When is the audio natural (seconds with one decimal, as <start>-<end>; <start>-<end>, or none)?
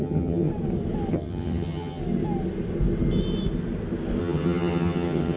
0.5-1.1; 2.0-4.2